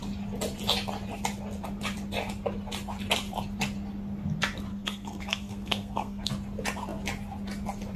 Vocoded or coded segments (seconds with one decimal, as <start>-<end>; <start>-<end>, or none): 4.7-6.3